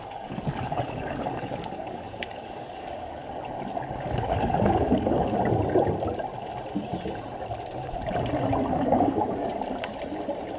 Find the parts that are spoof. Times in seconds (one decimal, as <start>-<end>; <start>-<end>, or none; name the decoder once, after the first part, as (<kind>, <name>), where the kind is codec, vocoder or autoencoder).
0.0-3.2 (codec, DAC); 4.0-5.3; 8.7-9.5